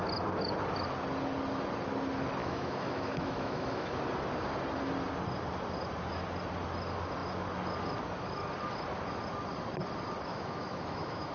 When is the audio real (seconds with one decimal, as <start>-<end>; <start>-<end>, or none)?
0.0-2.4; 4.0-10.3